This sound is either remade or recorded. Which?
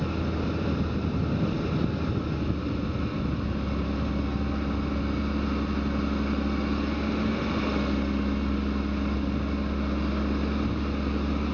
recorded